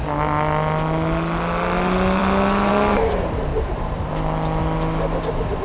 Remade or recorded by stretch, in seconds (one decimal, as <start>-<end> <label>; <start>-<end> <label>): 0.0-3.5 recorded; 3.5-4.1 remade; 4.1-5.6 recorded

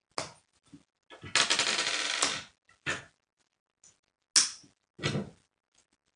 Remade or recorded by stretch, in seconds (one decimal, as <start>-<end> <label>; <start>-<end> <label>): 0.0-6.2 recorded